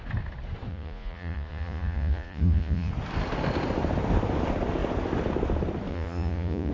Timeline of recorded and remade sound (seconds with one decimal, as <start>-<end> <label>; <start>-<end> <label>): 0.0-0.7 recorded; 0.7-2.9 remade; 2.9-5.9 recorded; 5.9-6.7 remade